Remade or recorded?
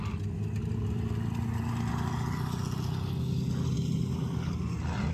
recorded